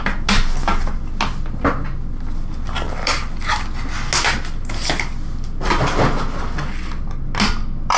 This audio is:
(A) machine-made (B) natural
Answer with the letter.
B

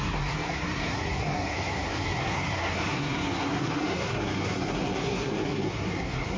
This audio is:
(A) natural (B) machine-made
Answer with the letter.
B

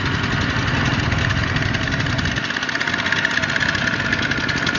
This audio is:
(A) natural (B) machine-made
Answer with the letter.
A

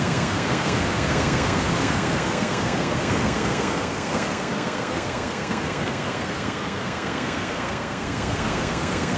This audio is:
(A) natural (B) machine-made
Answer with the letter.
B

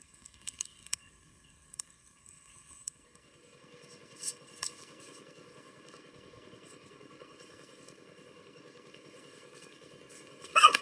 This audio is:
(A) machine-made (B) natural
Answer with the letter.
A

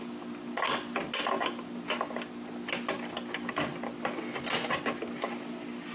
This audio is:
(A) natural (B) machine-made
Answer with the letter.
A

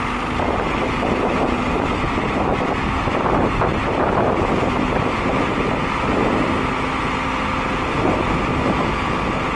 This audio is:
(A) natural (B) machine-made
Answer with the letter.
A